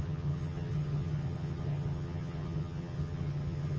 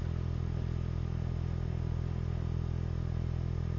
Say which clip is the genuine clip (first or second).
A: second